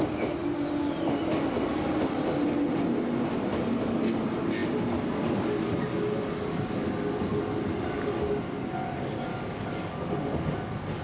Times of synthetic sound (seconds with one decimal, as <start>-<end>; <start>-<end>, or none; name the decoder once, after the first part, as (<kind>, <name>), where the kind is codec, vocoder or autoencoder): 9.3-10.1 (codec, DAC)

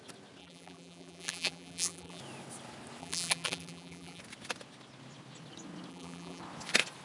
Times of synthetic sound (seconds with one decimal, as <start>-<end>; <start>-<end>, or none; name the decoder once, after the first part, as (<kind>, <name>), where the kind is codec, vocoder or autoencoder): 0.4-2.2 (vocoder, BigVGAN v2); 3.0-4.2; 5.9-6.4

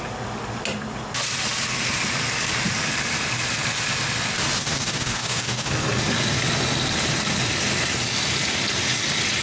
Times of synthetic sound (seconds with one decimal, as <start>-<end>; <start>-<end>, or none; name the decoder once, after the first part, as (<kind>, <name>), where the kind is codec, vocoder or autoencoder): 4.6-5.7 (codec, DAC)

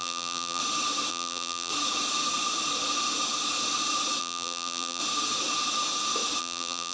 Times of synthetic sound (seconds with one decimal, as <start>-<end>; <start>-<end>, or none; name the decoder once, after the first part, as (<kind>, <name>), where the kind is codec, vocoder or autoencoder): 0.0-0.6 (vocoder, BigVGAN v2); 1.1-1.7; 4.2-5.0; 6.4-6.9

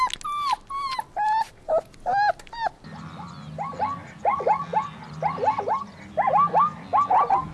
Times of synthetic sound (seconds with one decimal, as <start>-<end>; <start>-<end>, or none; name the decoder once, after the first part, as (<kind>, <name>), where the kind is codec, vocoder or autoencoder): none

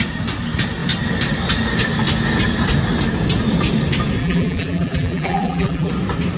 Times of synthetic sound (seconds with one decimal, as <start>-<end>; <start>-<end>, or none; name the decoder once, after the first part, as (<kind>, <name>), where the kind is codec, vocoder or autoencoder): 4.2-5.9 (vocoder, BigVGAN v2)

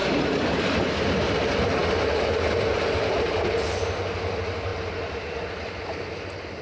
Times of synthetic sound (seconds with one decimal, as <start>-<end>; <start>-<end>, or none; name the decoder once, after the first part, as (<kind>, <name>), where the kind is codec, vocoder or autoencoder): 0.0-0.9 (vocoder, BigVGAN v2); 4.7-5.4

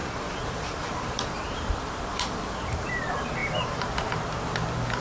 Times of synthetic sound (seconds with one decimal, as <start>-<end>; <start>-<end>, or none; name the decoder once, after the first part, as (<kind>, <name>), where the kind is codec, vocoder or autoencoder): 0.0-2.9 (vocoder, BigVGAN v2); 3.4-4.4